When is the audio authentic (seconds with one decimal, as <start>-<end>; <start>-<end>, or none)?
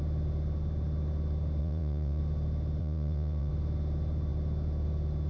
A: 0.0-1.6; 2.2-2.8; 3.5-5.3